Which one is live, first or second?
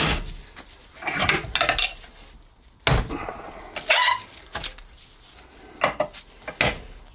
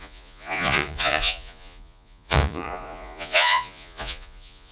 first